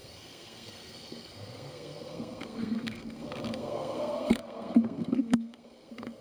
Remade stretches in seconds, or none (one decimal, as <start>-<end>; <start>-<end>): 0.0-6.2

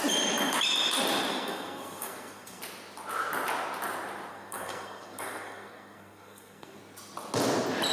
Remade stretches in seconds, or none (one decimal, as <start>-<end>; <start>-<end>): 1.3-2.6; 4.3-6.8

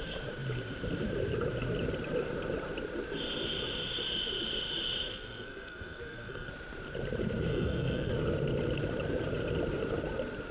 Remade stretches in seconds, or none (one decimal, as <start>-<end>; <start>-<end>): 5.1-6.5; 7.5-8.1

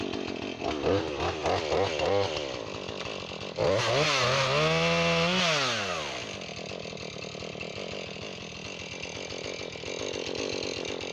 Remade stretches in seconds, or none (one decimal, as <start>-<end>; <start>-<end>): none

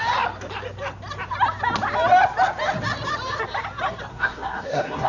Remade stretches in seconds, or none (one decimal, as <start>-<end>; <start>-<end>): 4.1-5.1

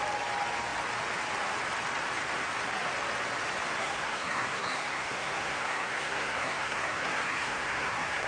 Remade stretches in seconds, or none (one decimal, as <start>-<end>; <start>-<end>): 3.8-8.3

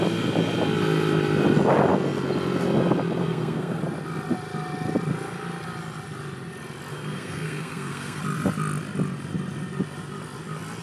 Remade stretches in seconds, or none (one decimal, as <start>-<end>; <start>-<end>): 3.2-3.8; 6.9-8.2

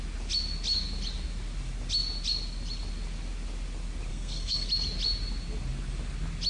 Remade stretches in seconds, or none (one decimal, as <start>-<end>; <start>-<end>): 4.1-4.7